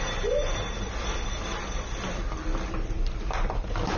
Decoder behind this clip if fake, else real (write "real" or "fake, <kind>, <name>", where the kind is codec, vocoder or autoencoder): fake, vocoder, BigVGAN v2